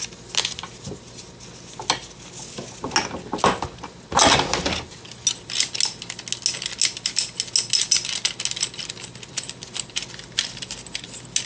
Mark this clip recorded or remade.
recorded